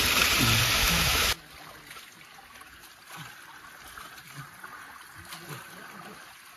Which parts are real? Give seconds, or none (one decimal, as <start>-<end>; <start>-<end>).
0.0-0.8; 1.4-6.6